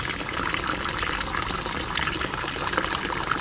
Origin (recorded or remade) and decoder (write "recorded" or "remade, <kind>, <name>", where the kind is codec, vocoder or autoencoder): recorded